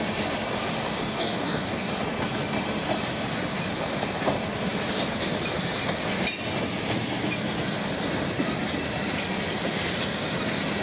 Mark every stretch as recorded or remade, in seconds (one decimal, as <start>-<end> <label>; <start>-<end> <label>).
0.0-1.2 recorded; 1.2-1.9 remade; 1.9-10.8 recorded